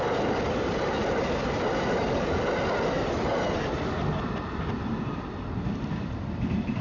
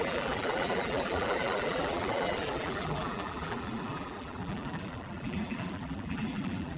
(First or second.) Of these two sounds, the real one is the first